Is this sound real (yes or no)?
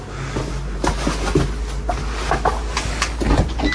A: yes